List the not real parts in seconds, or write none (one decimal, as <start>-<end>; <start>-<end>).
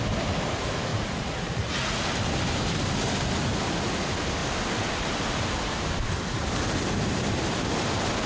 0.9-2.0